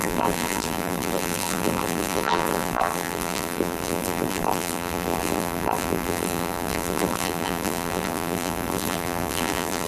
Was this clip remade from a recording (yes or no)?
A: yes